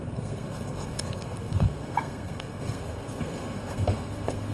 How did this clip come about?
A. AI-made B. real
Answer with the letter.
A